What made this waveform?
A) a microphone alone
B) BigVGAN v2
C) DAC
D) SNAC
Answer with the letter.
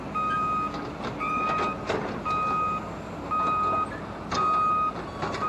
A